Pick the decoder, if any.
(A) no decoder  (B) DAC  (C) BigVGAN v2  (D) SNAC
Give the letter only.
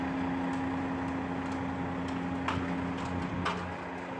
A